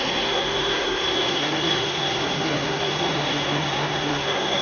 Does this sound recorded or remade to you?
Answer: remade